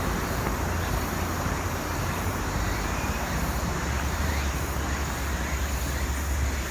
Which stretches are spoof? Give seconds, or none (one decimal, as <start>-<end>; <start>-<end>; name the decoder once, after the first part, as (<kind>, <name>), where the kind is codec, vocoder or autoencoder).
1.9-4.3 (vocoder, BigVGAN v2)